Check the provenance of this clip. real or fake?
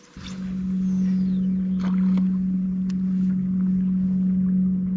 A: real